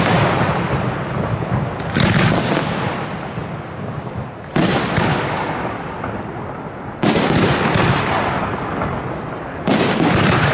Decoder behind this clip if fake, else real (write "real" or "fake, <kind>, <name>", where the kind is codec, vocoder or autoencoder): real